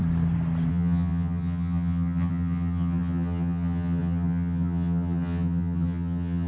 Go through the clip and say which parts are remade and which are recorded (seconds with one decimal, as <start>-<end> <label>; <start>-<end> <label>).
0.0-0.7 recorded; 0.7-6.5 remade